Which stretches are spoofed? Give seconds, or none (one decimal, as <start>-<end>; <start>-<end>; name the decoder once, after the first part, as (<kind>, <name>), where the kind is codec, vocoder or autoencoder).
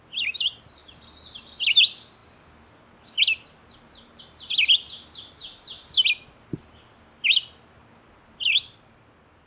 none